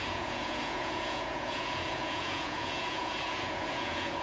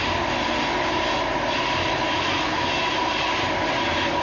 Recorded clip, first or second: second